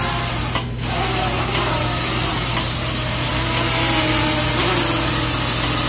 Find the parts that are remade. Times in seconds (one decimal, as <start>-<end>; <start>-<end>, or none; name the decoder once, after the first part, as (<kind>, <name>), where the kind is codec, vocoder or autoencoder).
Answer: 2.3-3.3 (vocoder, BigVGAN v2)